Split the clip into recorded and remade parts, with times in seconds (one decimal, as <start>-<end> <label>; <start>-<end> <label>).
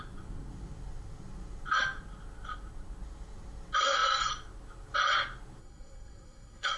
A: 0.0-5.6 recorded; 5.6-6.8 remade